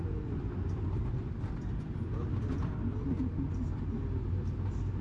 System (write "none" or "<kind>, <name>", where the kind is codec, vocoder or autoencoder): none